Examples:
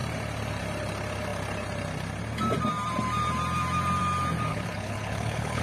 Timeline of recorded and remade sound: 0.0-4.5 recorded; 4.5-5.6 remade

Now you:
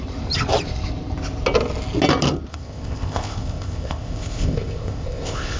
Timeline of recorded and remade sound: 0.0-2.5 recorded; 2.5-5.6 remade

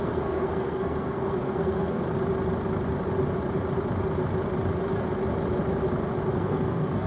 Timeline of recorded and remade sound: 0.0-2.0 remade; 2.0-6.3 recorded; 6.3-7.1 remade

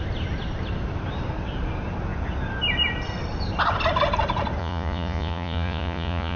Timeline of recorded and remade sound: 0.0-4.6 recorded; 4.6-6.4 remade

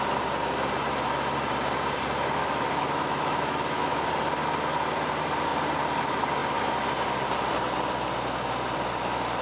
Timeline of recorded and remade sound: 0.0-2.4 recorded; 2.4-4.1 remade; 4.1-9.4 recorded

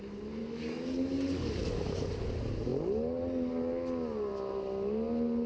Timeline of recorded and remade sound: 0.0-0.4 recorded; 0.4-2.1 remade; 2.1-5.5 recorded

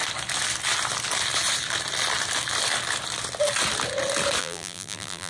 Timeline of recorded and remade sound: 0.0-4.4 recorded; 4.4-5.3 remade